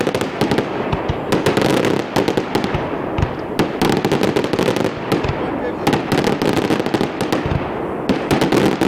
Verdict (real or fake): real